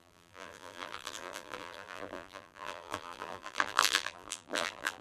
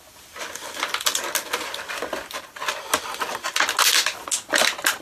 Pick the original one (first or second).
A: second